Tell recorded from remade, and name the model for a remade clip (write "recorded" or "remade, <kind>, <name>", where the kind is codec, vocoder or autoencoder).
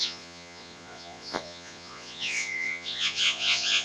remade, vocoder, Vocos